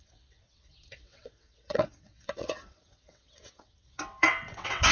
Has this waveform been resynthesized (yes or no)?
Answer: yes